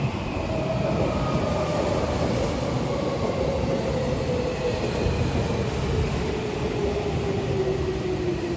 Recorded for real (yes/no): yes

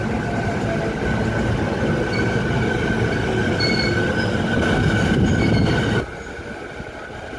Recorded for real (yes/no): yes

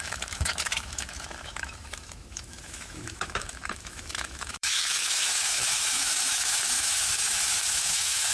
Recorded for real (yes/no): no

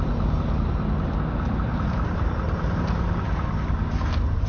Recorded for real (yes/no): yes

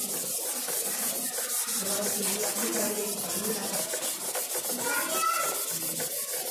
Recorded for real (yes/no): yes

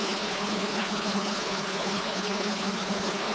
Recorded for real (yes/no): no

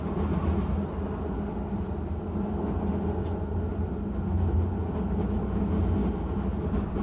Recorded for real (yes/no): yes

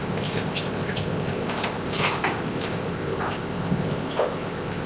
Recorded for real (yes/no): no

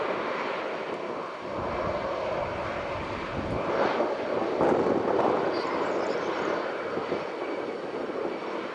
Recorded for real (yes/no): yes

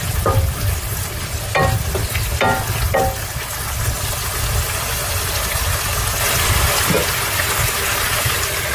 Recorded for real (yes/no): yes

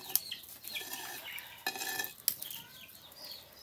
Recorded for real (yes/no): yes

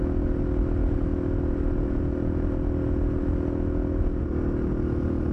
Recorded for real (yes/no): yes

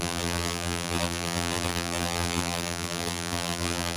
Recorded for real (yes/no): no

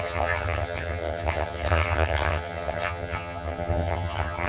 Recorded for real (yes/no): no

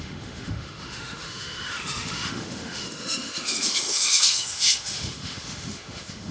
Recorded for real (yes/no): no